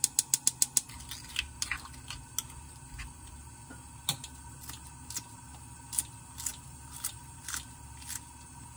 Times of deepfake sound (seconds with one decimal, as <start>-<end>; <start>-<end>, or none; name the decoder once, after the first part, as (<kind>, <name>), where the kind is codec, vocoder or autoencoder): 6.5-7.9 (vocoder, BigVGAN v2)